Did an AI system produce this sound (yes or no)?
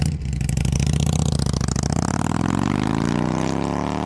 no